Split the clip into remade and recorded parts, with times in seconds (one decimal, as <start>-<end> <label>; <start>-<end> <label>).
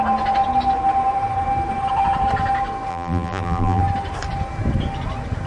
0.0-2.9 recorded; 2.9-3.8 remade; 3.8-5.5 recorded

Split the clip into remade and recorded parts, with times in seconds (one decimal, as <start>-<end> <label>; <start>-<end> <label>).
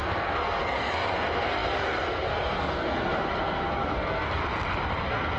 0.0-4.4 remade; 4.4-5.0 recorded; 5.0-5.4 remade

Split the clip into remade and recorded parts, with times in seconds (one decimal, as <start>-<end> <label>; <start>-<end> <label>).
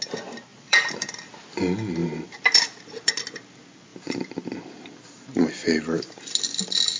0.0-0.5 recorded; 0.5-1.3 remade; 1.3-2.0 recorded; 2.0-3.1 remade; 3.1-3.9 recorded; 3.9-5.5 remade; 5.5-7.0 recorded